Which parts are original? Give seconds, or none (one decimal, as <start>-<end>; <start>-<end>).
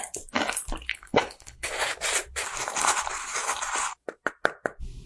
0.0-0.9; 1.7-5.1